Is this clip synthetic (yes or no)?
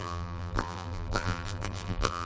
yes